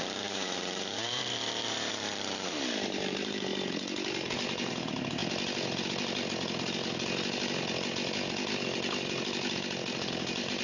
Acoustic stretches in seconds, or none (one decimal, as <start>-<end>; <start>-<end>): 3.5-4.1; 5.2-9.9